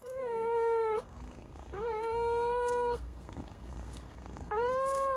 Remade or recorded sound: remade